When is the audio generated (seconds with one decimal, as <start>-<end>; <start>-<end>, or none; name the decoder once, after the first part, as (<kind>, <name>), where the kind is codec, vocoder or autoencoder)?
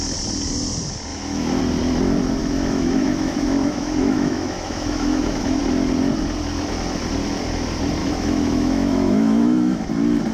1.1-1.6 (autoencoder, DAC-VAE); 2.4-5.6; 8.0-9.9